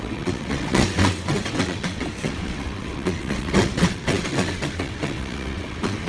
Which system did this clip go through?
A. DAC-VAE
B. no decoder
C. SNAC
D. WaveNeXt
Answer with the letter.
D